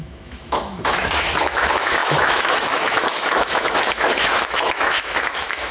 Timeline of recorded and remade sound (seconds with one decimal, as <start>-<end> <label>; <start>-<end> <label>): 0.0-5.7 remade